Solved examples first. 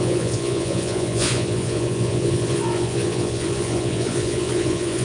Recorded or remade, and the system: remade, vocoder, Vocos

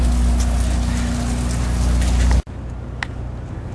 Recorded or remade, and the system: recorded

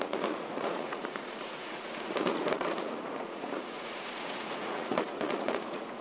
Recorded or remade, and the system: remade, vocoder, Vocos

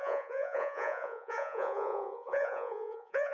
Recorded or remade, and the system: remade, vocoder, Vocos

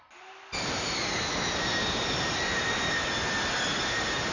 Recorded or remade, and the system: recorded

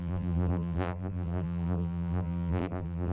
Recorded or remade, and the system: remade, vocoder, BigVGAN v2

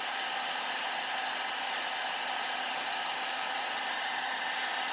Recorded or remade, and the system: recorded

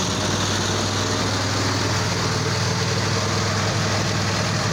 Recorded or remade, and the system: recorded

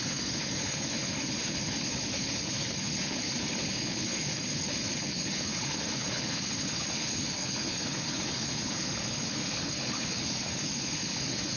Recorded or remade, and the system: remade, codec, HILCodec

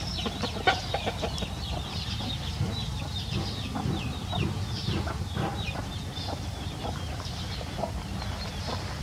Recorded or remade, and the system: remade, vocoder, BigVGAN v2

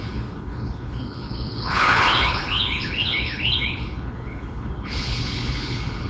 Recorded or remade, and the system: remade, codec, HILCodec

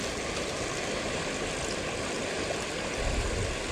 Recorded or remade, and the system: recorded